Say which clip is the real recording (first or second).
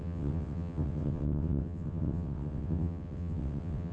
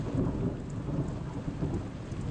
second